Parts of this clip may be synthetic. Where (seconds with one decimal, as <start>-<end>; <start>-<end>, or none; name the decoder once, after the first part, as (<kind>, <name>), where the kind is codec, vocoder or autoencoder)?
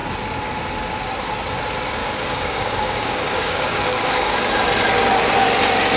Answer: 2.0-4.5 (codec, DAC)